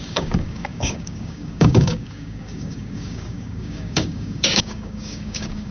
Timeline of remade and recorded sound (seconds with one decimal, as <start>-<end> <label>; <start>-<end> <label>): 0.0-5.7 remade